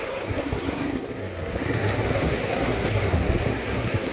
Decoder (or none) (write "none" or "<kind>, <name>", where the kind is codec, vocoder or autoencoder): codec, SNAC